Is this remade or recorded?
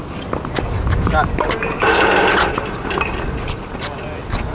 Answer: recorded